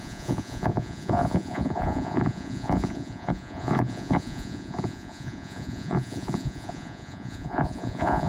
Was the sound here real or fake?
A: fake